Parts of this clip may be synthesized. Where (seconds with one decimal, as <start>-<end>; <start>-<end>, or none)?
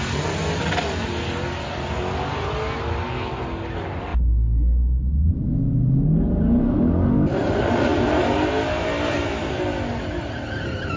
none